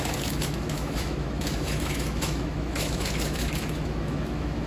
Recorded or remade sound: remade